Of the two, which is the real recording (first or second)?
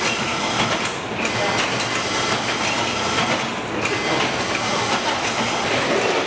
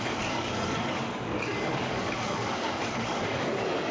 first